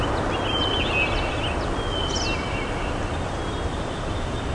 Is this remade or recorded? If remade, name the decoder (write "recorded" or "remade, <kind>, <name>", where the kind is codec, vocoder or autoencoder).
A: recorded